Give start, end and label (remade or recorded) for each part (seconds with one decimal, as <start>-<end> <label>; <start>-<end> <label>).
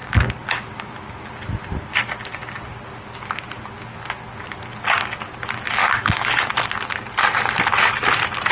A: 0.0-5.8 recorded; 5.8-6.5 remade; 6.5-8.5 recorded